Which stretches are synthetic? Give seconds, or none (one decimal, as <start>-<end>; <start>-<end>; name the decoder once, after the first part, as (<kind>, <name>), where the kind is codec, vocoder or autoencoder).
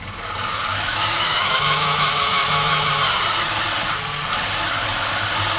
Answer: 0.7-2.9 (autoencoder, DAC-VAE)